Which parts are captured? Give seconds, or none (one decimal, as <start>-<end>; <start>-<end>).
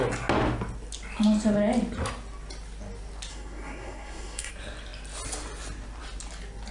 0.0-3.3; 4.5-6.7